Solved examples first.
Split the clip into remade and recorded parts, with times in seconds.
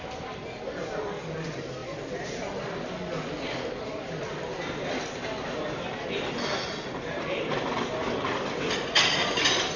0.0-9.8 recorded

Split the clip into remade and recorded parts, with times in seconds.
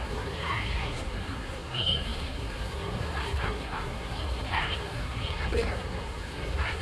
0.0-6.8 remade